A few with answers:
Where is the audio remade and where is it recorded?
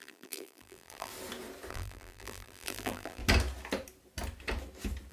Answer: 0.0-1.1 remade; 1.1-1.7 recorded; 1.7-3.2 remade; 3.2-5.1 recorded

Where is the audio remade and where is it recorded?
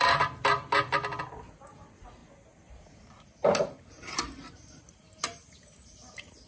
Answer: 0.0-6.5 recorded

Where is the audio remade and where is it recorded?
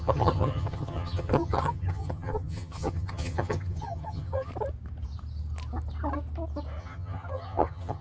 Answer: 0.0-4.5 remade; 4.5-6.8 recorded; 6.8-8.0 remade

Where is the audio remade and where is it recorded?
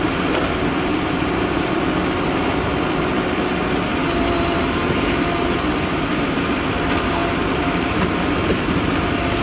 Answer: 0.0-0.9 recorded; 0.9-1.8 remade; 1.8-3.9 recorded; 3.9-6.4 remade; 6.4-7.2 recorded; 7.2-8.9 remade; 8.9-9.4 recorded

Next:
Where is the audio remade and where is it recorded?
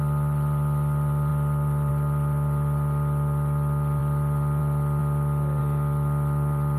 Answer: 0.0-5.0 remade; 5.0-5.6 recorded; 5.6-6.8 remade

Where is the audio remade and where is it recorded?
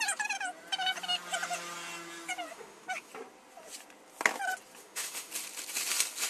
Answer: 0.0-2.5 recorded; 2.5-3.1 remade; 3.1-4.8 recorded; 4.8-5.3 remade; 5.3-6.3 recorded